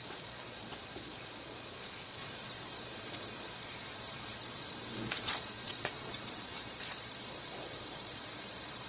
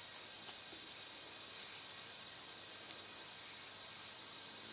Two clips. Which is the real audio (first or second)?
second